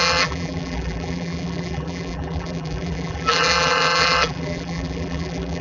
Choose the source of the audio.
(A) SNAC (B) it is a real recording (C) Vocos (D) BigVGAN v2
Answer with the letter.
D